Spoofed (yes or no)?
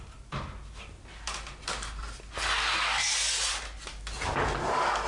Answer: no